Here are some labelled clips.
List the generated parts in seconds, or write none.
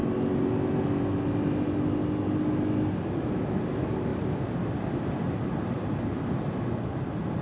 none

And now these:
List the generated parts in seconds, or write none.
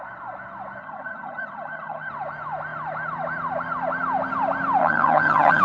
0.8-2.1 (vocoder, HiFi-GAN); 4.8-5.6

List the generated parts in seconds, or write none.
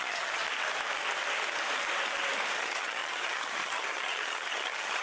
0.0-0.4 (vocoder, HiFi-GAN); 2.6-5.0